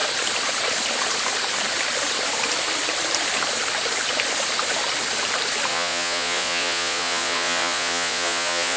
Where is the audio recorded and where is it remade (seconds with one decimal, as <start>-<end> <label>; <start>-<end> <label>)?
0.0-5.7 recorded; 5.7-8.8 remade